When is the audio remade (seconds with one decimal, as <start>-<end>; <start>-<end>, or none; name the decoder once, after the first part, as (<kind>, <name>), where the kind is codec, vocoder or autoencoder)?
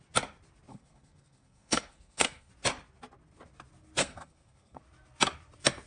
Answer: 0.7-2.5 (codec, SNAC); 4.0-4.8